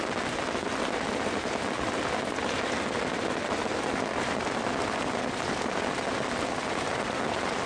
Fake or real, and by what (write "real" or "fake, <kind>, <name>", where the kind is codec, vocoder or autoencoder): real